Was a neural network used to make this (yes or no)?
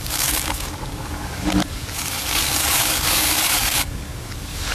yes